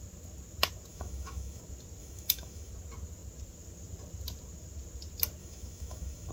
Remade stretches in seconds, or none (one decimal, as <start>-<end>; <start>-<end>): 0.9-1.6; 2.0-2.7; 5.4-6.3

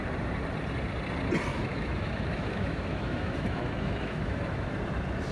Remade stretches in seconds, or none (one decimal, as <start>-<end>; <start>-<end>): 1.5-4.7

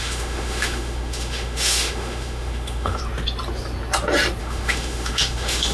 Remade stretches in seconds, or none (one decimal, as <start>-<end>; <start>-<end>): 0.0-3.0; 4.4-5.7

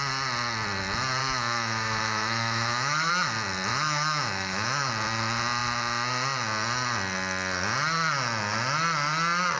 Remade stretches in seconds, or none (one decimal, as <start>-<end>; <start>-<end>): 1.2-3.1; 3.7-4.9

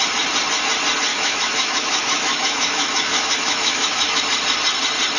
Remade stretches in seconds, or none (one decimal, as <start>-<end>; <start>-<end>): 1.1-4.2

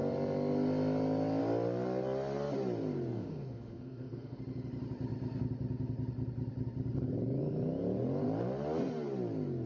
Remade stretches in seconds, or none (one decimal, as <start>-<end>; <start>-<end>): 3.1-4.4

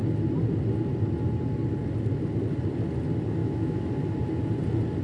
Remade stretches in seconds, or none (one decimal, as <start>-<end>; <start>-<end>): 3.4-3.9

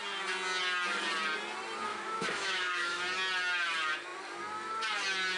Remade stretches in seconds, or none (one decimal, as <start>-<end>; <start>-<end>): 1.9-3.0